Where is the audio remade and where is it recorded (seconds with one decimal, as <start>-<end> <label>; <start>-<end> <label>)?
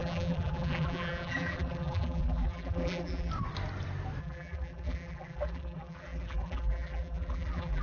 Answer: 0.0-3.3 remade; 3.3-4.2 recorded; 4.2-7.8 remade